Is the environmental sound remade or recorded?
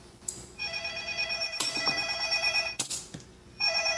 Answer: remade